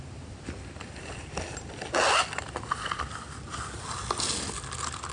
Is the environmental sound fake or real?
real